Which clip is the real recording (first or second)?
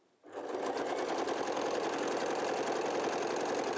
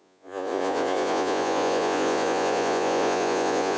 first